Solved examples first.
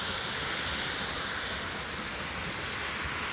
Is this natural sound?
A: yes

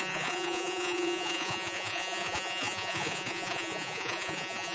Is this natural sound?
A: no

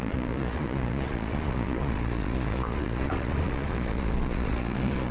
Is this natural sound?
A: no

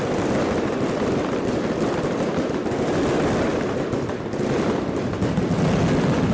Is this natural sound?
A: yes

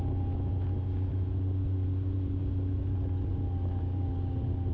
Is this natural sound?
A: yes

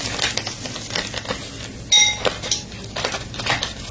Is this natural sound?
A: yes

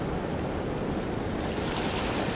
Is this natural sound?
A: yes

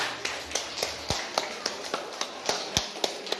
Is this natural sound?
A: yes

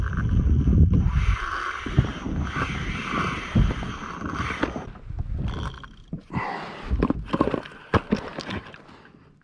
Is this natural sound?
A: yes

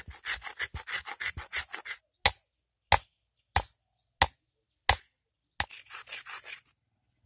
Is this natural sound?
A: yes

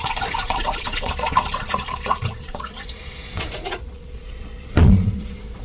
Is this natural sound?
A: no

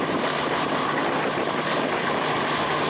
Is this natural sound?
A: yes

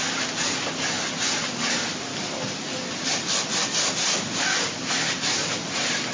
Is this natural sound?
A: yes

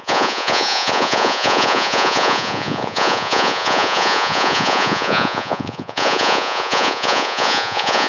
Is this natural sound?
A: no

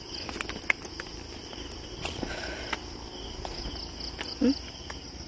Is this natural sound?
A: yes